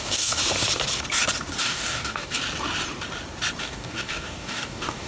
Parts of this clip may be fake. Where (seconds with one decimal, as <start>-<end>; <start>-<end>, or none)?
0.0-0.4; 1.6-2.4; 3.6-5.1